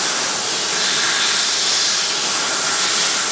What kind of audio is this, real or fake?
real